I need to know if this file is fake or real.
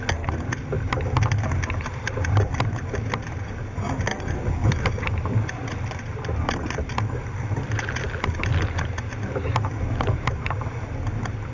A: real